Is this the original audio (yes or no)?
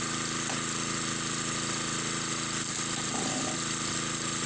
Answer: yes